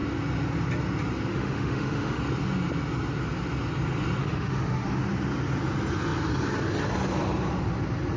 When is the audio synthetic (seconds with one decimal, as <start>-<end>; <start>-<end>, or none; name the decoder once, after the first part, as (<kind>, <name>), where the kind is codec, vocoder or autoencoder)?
1.3-2.2 (autoencoder, DAC-VAE); 4.2-5.0